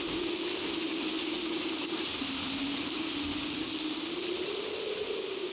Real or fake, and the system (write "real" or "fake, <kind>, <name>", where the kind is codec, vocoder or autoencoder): real